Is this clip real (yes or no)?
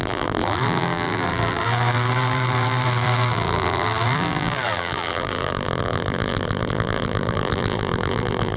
no